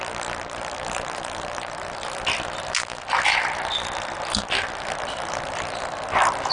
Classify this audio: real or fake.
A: real